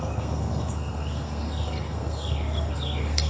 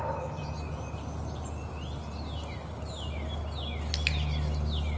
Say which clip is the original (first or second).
second